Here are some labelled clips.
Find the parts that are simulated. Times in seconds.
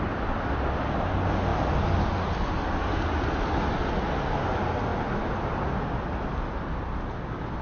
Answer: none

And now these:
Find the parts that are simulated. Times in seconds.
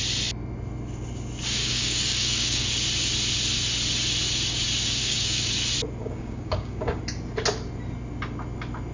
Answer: 1.6-2.6 (codec, DAC); 5.0-5.5; 6.0-7.0